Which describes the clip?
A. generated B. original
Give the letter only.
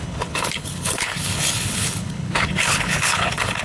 A